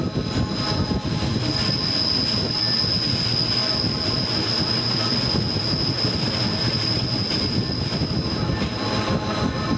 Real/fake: real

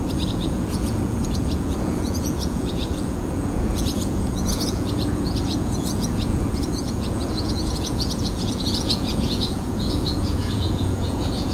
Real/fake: fake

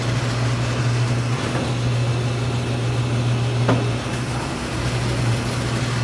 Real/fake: real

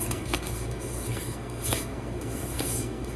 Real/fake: fake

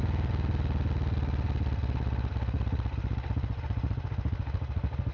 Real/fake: real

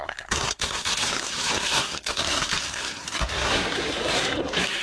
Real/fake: fake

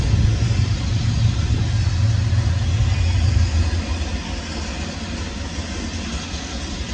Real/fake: real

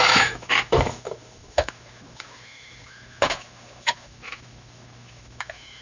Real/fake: fake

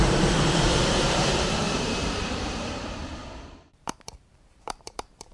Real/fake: fake